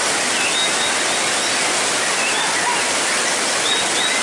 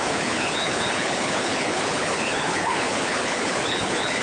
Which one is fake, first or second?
second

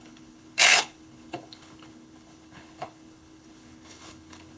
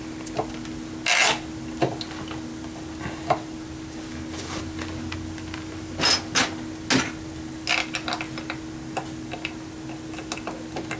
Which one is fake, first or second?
first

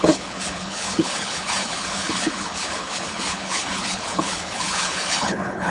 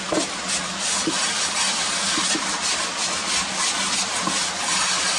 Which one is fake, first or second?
first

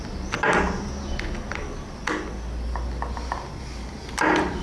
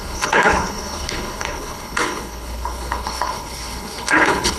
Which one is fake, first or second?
second